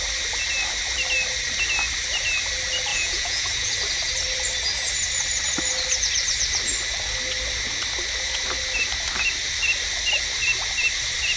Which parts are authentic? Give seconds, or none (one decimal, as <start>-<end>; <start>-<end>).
0.0-2.9; 3.7-11.4